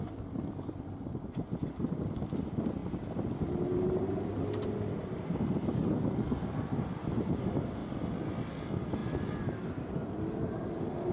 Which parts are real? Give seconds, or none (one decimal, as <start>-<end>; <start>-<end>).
0.0-2.8; 3.4-9.0; 10.3-11.1